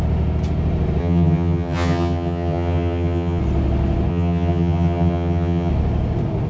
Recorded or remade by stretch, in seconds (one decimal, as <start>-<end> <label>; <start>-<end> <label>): 0.0-1.0 recorded; 1.0-3.4 remade; 3.4-4.1 recorded; 4.1-5.7 remade; 5.7-6.5 recorded